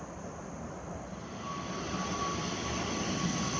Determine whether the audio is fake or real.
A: real